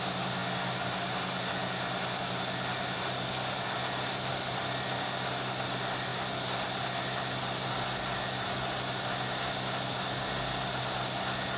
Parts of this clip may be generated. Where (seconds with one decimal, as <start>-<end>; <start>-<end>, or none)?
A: none